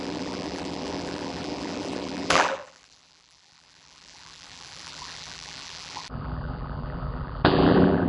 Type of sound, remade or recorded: remade